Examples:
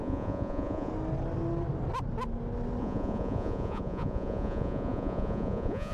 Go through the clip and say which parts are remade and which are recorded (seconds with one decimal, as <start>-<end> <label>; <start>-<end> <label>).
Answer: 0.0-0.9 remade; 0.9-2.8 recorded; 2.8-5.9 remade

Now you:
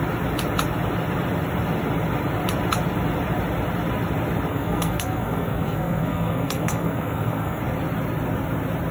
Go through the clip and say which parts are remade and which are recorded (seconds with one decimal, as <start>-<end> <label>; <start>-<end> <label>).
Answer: 0.0-4.5 recorded; 4.5-7.6 remade; 7.6-8.9 recorded

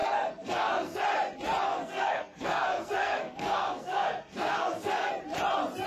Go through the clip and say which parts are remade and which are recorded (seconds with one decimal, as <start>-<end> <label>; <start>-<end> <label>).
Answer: 0.0-1.0 remade; 1.0-1.7 recorded; 1.7-5.1 remade; 5.1-5.9 recorded

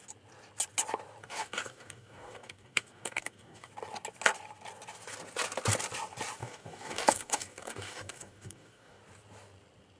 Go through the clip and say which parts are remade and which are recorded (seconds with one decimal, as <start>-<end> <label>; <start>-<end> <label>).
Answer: 0.0-1.2 recorded; 1.2-3.7 remade; 3.7-6.4 recorded; 6.4-9.0 remade; 9.0-10.0 recorded